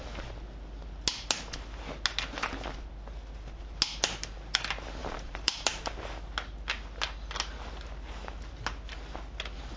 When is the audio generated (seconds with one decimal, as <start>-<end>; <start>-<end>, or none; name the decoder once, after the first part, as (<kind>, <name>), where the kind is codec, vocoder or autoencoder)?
5.0-6.0 (vocoder, BigVGAN v2)